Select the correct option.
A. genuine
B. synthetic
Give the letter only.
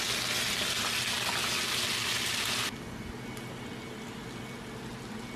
A